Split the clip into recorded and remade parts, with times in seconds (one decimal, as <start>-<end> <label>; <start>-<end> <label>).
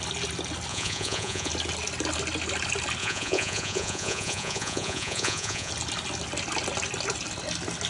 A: 0.0-0.7 recorded; 0.7-1.5 remade; 1.5-3.0 recorded; 3.0-5.7 remade; 5.7-7.9 recorded